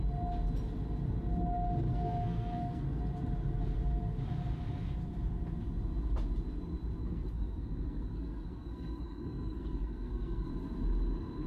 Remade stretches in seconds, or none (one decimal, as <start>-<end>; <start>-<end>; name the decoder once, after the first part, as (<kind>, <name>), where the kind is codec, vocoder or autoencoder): 1.9-3.0 (codec, SNAC); 7.0-10.5